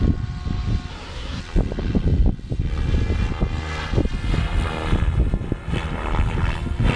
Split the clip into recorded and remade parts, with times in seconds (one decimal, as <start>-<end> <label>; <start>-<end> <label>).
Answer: 0.0-0.9 recorded; 0.9-1.4 remade; 1.4-7.0 recorded